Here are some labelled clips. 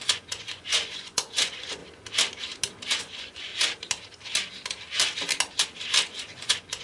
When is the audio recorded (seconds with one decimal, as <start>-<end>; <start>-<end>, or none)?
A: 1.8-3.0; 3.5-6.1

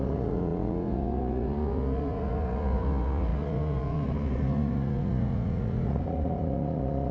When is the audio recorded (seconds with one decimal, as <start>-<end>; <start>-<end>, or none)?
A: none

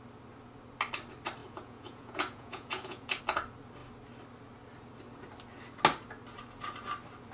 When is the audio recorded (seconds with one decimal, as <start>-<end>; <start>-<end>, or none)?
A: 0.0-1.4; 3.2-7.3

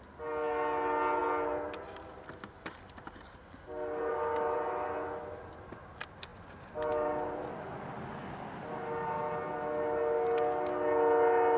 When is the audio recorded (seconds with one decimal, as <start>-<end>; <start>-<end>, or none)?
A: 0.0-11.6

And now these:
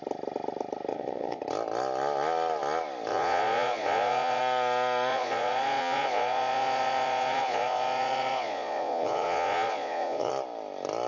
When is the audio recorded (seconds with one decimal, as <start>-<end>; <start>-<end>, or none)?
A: 0.0-0.9; 1.4-3.1; 4.4-5.1; 10.3-11.1

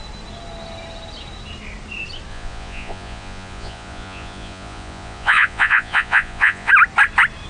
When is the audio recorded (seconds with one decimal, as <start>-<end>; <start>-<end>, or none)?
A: 0.0-2.3; 6.7-7.5

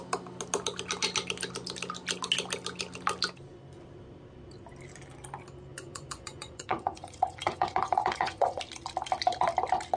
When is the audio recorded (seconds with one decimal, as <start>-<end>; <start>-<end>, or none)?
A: 0.0-5.7; 8.6-10.0

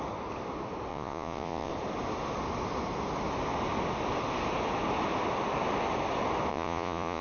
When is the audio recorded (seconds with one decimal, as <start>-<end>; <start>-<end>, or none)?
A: 0.0-0.9; 1.7-6.5